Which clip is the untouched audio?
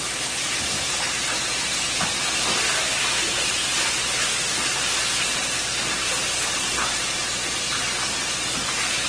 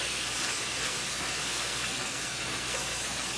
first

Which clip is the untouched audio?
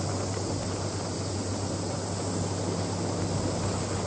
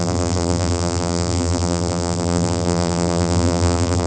first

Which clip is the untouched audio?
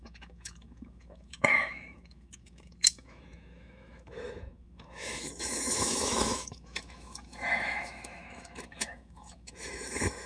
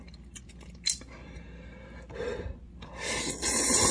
second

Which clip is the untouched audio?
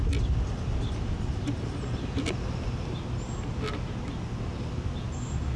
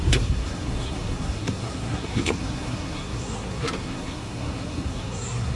first